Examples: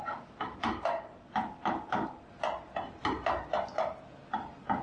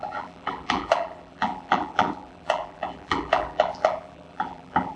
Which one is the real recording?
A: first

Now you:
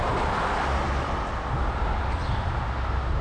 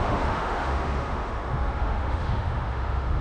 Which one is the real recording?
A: first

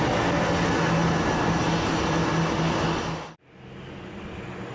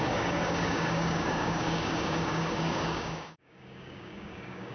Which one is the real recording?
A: first